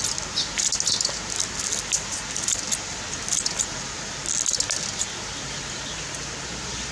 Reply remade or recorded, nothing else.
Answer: recorded